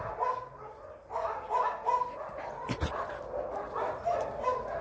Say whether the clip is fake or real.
real